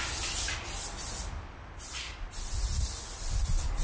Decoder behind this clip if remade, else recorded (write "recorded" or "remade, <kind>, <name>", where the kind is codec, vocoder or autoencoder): recorded